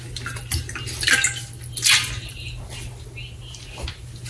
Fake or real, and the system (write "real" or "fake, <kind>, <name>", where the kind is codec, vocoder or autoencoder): real